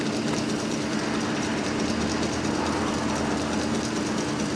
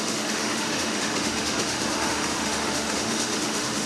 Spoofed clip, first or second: second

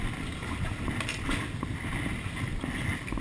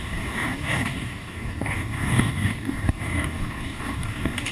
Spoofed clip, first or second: second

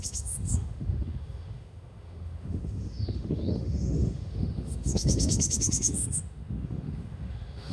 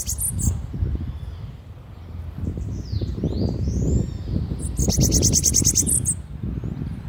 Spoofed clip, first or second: first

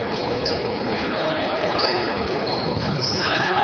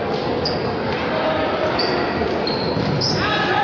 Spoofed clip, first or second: first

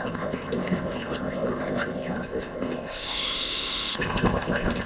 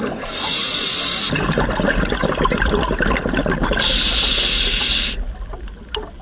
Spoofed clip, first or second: first